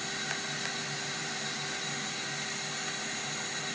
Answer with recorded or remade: recorded